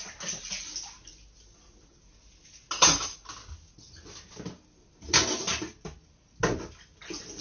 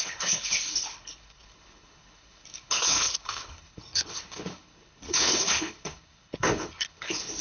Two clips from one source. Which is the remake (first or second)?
second